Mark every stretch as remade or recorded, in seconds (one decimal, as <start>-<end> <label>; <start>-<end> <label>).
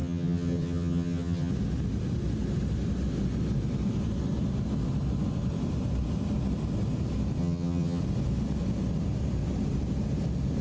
0.0-1.5 remade; 1.5-7.4 recorded; 7.4-8.0 remade; 8.0-10.6 recorded